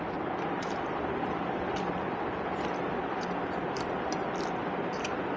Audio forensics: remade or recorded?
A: recorded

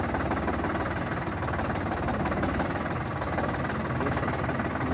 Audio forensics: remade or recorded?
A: recorded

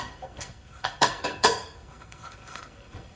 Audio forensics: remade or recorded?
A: remade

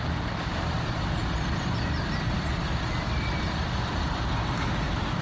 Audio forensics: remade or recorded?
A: recorded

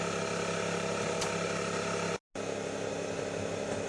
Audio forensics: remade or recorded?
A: recorded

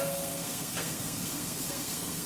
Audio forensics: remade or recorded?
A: remade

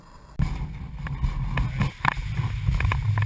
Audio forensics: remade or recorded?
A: recorded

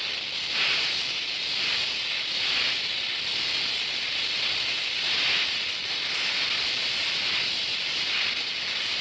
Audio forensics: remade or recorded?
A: recorded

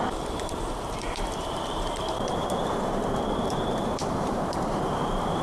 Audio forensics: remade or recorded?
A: remade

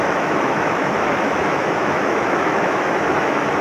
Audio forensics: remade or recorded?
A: remade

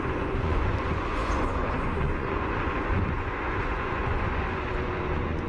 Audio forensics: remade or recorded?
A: remade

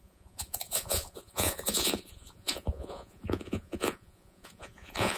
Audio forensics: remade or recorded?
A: remade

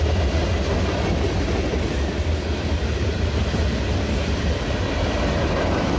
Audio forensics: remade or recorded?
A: recorded